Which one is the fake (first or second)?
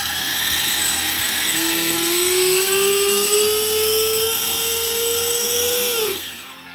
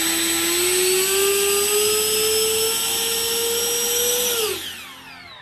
first